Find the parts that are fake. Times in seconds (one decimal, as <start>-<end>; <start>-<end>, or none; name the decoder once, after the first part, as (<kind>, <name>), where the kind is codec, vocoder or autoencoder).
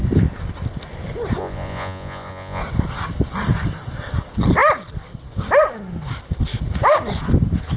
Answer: 1.4-2.6 (vocoder, Vocos)